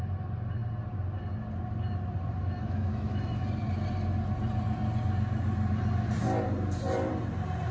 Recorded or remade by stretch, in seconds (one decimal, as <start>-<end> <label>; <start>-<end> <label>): 0.0-2.4 recorded; 2.4-3.4 remade; 3.4-7.7 recorded